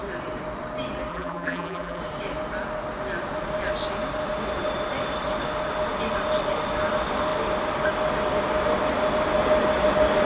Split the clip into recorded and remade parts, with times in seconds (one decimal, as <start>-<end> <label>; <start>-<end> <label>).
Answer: 0.0-1.1 recorded; 1.1-2.0 remade; 2.0-10.2 recorded